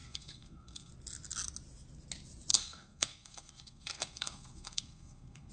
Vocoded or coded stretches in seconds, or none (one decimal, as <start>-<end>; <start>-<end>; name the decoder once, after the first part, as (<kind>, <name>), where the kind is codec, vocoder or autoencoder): 0.0-0.9 (codec, SNAC); 2.5-5.5